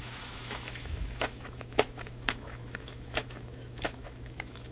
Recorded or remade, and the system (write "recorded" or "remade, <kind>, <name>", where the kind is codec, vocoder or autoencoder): remade, autoencoder, DAC-VAE